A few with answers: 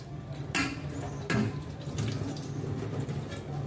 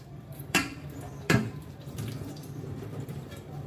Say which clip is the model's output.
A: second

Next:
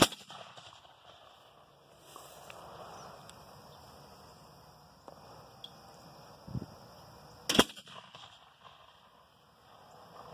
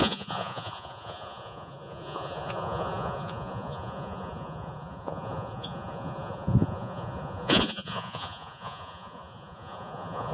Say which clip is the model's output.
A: second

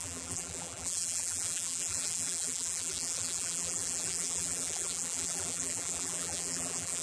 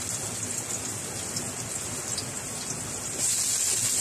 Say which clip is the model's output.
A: first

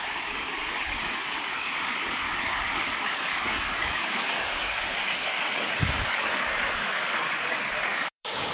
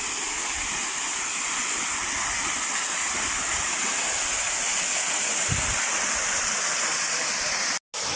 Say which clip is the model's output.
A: first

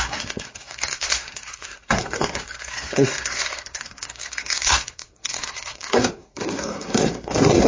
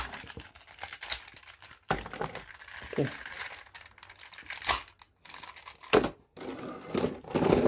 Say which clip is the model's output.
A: first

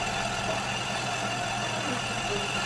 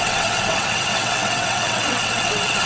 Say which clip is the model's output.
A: second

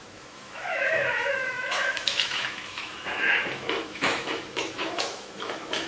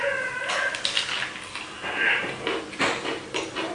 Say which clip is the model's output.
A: first